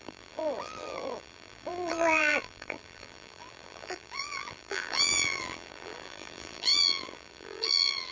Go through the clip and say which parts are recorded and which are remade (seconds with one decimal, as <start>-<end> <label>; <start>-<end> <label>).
0.0-8.1 remade